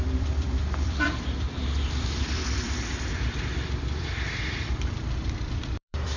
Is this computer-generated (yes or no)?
yes